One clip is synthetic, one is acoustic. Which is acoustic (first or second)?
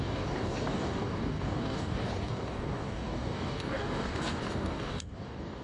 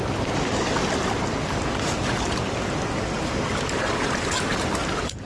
second